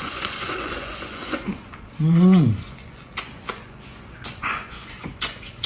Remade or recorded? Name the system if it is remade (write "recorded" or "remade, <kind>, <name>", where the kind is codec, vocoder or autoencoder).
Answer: remade, vocoder, Vocos